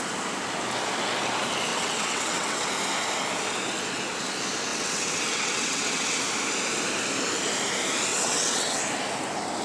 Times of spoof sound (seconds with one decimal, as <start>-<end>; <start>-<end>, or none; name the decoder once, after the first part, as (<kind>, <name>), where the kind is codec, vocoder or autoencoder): 1.7-2.7 (vocoder, WaveNeXt); 4.7-6.2; 8.1-8.8